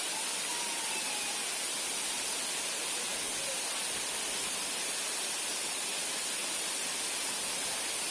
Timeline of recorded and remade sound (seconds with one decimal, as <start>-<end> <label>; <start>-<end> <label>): 0.0-8.1 recorded